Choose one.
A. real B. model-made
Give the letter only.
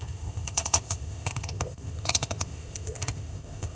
B